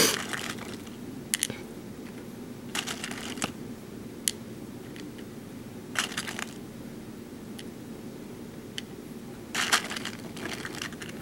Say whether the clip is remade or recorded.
recorded